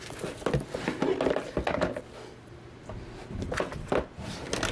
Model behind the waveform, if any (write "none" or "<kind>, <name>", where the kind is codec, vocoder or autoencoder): none